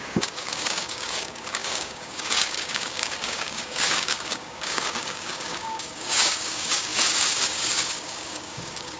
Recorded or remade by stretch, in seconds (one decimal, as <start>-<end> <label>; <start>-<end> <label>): 0.0-9.0 remade